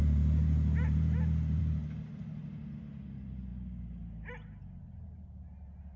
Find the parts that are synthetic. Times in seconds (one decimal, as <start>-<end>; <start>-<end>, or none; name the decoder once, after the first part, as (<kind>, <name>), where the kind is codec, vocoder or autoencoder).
none